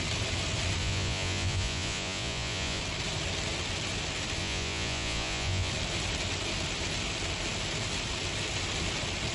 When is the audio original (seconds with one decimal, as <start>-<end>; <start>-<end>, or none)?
0.0-0.8; 2.8-4.4; 5.7-9.3